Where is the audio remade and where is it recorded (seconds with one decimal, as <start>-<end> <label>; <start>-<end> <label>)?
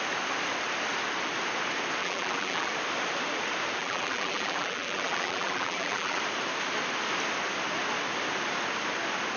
0.0-2.0 recorded; 2.0-2.7 remade; 2.7-3.8 recorded; 3.8-6.2 remade; 6.2-9.4 recorded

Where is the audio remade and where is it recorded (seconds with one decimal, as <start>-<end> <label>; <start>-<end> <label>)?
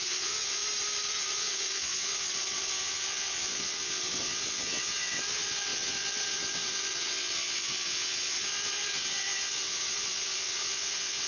0.0-0.6 remade; 0.6-1.1 recorded; 1.1-11.3 remade